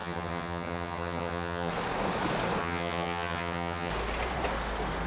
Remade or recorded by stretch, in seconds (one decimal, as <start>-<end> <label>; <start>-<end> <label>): 0.0-1.7 remade; 1.7-2.6 recorded; 2.6-3.9 remade; 3.9-5.1 recorded